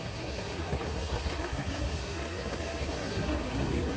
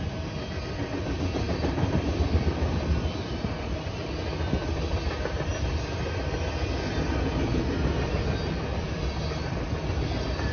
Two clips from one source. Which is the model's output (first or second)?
first